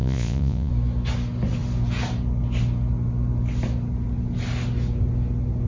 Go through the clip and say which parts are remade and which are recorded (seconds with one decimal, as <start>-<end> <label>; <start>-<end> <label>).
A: 0.0-0.7 remade; 0.7-5.7 recorded

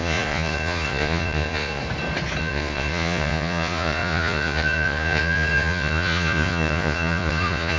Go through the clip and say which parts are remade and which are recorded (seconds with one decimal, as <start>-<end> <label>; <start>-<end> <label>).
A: 0.0-1.8 remade; 1.8-2.4 recorded; 2.4-7.8 remade

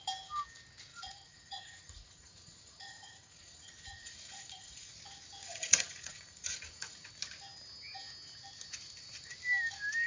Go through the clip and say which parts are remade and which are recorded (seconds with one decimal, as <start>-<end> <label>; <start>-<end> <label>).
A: 0.0-0.9 recorded; 0.9-4.9 remade; 4.9-5.4 recorded; 5.4-7.1 remade; 7.1-10.1 recorded

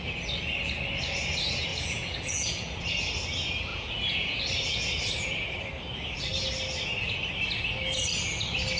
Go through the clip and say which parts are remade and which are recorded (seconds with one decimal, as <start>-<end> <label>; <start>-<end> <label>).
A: 0.0-1.7 recorded; 1.7-2.9 remade; 2.9-3.7 recorded; 3.7-4.4 remade; 4.4-8.8 recorded

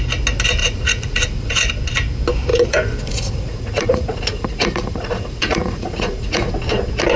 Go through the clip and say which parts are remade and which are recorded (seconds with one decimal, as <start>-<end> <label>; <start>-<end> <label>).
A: 0.0-0.6 recorded; 0.6-1.7 remade; 1.7-2.5 recorded; 2.5-6.5 remade; 6.5-7.2 recorded

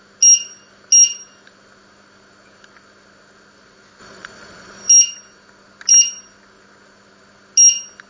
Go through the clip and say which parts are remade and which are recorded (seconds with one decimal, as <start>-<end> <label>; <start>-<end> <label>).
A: 0.0-4.0 recorded; 4.0-4.9 remade; 4.9-8.1 recorded

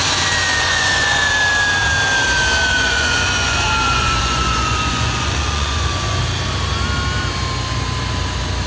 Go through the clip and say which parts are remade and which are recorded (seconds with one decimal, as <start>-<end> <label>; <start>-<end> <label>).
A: 0.0-0.5 recorded; 0.5-1.3 remade; 1.3-2.7 recorded; 2.7-6.2 remade; 6.2-8.7 recorded

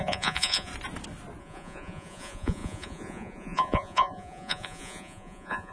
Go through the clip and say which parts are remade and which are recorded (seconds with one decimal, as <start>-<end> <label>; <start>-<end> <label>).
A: 0.0-0.7 remade; 0.7-1.4 recorded; 1.4-5.7 remade